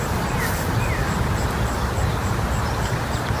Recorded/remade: recorded